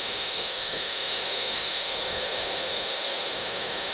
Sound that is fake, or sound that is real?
fake